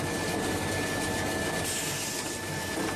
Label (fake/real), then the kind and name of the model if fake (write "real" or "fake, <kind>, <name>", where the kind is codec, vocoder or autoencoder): real